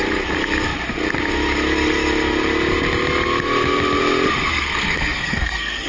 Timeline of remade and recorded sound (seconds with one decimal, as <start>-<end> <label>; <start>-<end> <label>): 0.0-4.3 recorded; 4.3-5.9 remade